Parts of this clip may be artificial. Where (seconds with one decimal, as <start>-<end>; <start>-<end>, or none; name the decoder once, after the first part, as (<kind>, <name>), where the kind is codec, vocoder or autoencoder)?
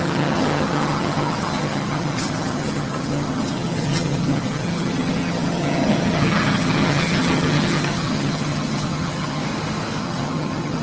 0.0-9.4 (vocoder, HiFi-GAN); 10.0-10.8